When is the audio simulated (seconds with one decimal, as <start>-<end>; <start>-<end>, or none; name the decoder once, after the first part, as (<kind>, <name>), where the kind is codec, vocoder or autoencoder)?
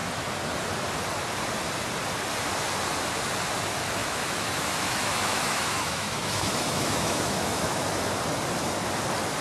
4.0-7.9 (autoencoder, DAC-VAE)